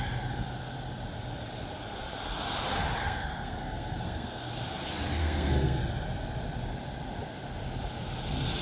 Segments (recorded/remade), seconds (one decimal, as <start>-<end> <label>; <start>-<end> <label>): 0.0-3.0 recorded; 3.0-4.5 remade; 4.5-5.2 recorded; 5.2-5.8 remade; 5.8-8.6 recorded